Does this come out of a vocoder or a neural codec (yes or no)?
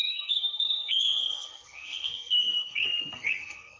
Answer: yes